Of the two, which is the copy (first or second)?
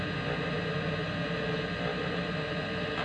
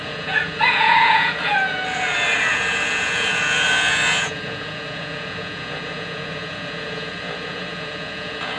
second